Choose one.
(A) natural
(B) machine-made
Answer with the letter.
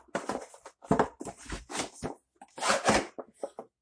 A